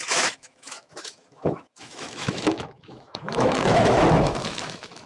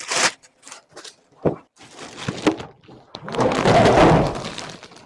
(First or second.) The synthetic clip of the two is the first